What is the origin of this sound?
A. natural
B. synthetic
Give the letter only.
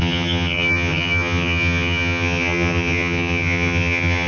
B